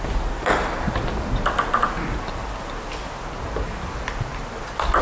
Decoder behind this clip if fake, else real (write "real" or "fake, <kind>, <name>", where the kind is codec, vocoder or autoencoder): real